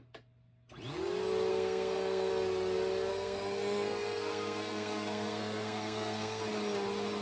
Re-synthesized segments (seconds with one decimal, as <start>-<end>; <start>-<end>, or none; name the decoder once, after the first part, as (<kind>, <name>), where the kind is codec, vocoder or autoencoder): 1.5-2.3 (codec, SNAC); 3.1-6.4